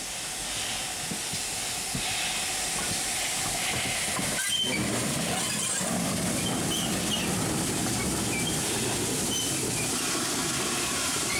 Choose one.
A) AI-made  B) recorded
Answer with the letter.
B